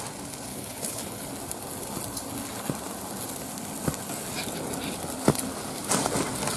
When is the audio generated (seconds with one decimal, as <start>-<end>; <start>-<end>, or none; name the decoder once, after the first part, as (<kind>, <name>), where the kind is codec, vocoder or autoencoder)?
0.5-1.3 (codec, HILCodec)